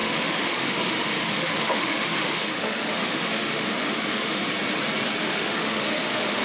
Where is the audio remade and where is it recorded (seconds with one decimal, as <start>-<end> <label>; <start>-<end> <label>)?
0.0-4.4 remade; 4.4-5.2 recorded; 5.2-6.4 remade